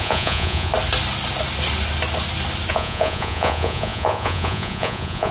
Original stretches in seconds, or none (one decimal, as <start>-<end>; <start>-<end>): 0.7-2.7